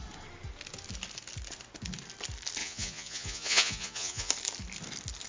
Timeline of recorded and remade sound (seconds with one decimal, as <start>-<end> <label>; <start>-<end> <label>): 0.0-2.6 recorded; 2.6-4.3 remade; 4.3-5.3 recorded